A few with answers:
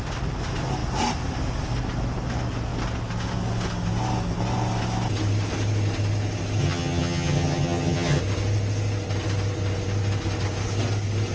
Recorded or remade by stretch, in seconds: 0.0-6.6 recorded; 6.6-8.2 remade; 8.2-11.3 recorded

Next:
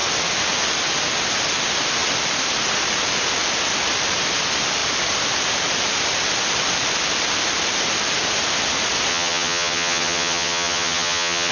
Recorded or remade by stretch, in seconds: 0.0-9.1 recorded; 9.1-11.5 remade

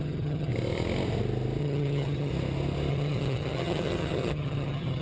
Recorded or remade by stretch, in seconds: 0.0-0.5 remade; 0.5-1.6 recorded; 1.6-2.3 remade; 2.3-2.9 recorded; 2.9-5.0 remade

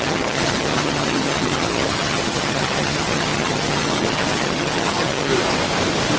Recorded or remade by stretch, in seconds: 0.0-5.3 remade; 5.3-6.2 recorded

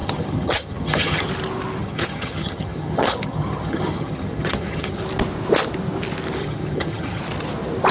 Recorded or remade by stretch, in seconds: 0.0-1.3 remade; 1.3-1.8 recorded; 1.8-5.0 remade; 5.0-6.4 recorded; 6.4-7.2 remade; 7.2-7.9 recorded